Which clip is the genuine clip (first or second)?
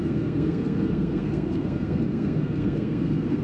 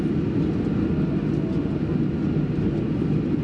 second